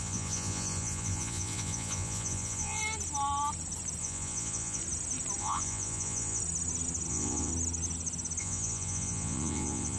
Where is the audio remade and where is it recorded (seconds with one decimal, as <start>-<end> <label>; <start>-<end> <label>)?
0.0-2.8 remade; 2.8-4.0 recorded; 4.0-4.8 remade; 4.8-5.4 recorded; 5.4-6.4 remade; 6.4-7.1 recorded; 7.1-7.5 remade; 7.5-8.4 recorded; 8.4-10.0 remade